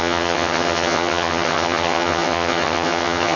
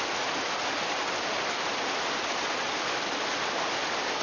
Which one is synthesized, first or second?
first